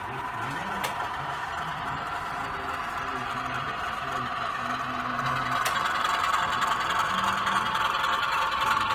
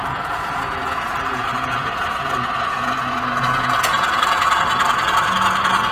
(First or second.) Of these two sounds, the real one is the first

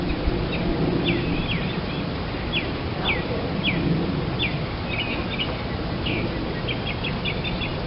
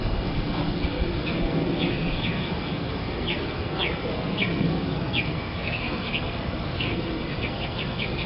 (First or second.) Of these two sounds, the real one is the first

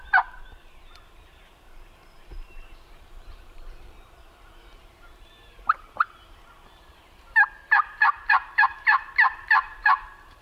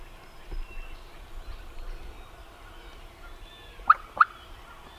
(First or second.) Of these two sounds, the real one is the second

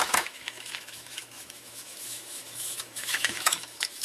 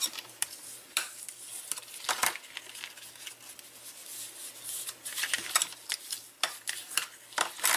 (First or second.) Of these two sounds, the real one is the second